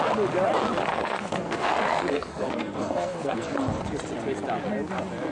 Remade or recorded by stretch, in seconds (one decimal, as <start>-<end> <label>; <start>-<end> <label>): 0.0-0.9 recorded; 0.9-3.8 remade; 3.8-5.3 recorded